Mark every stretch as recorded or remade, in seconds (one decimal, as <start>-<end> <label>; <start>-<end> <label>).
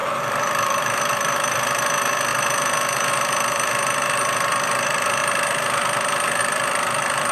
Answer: 0.0-2.3 remade; 2.3-3.1 recorded; 3.1-5.2 remade; 5.2-6.4 recorded; 6.4-7.3 remade